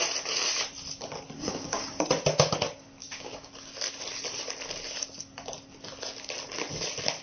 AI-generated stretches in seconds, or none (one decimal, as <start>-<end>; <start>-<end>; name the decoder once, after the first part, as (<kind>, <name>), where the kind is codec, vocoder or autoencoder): 1.4-2.0 (codec, DAC); 3.0-3.5